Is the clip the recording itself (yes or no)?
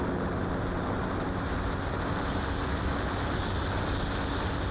yes